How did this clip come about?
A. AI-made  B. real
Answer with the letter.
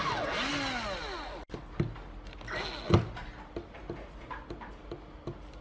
B